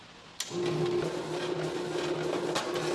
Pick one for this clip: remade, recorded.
recorded